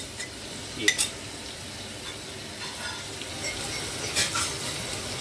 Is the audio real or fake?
real